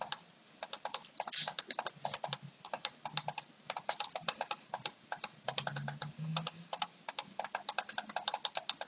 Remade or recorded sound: recorded